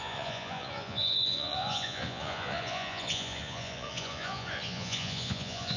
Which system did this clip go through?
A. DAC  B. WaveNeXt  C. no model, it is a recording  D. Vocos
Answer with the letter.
D